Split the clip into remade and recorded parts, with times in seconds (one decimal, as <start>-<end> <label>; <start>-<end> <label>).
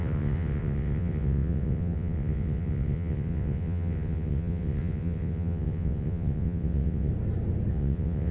0.0-7.1 remade; 7.1-7.7 recorded; 7.7-8.3 remade